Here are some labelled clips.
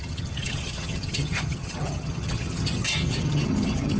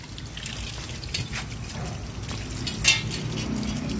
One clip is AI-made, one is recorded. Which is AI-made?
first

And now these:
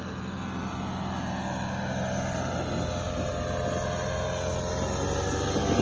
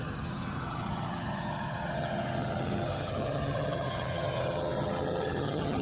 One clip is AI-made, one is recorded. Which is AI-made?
second